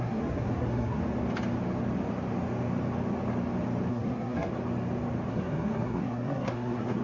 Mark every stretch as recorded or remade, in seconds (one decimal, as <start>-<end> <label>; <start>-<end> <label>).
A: 0.0-1.0 remade; 1.0-3.9 recorded; 3.9-4.5 remade; 4.5-5.3 recorded; 5.3-7.0 remade